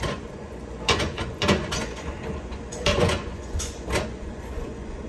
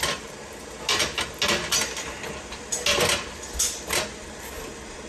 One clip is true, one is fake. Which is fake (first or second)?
first